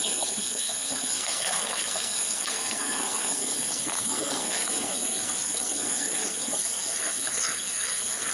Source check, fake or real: fake